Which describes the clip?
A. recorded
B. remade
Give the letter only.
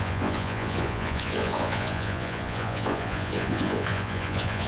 B